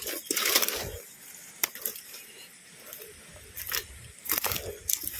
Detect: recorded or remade recorded